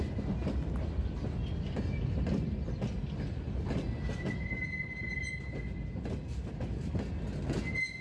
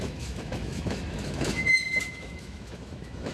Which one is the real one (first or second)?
first